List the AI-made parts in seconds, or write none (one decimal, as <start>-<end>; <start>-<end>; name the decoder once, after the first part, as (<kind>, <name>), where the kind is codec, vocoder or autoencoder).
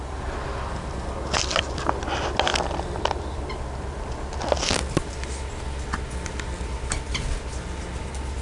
none